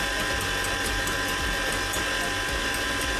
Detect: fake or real real